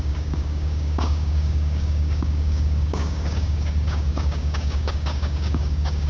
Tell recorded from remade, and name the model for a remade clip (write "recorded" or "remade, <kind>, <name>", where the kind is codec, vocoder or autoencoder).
remade, codec, DAC